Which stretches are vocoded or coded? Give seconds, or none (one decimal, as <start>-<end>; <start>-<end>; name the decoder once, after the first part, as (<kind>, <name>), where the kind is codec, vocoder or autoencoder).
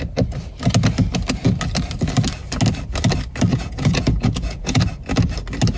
3.5-4.8 (vocoder, Vocos)